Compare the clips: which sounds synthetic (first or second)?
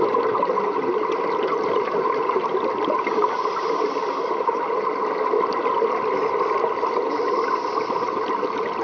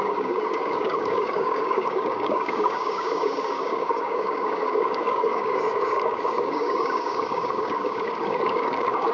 second